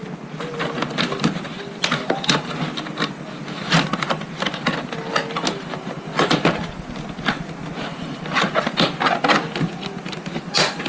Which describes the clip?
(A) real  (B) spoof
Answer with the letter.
A